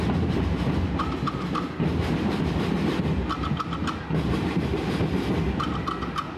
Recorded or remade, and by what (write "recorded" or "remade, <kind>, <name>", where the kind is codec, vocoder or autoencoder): recorded